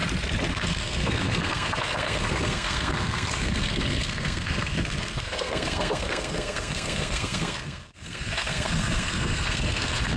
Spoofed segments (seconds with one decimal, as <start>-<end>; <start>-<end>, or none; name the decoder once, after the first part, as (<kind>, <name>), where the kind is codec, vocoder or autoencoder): 0.5-10.2 (codec, SNAC)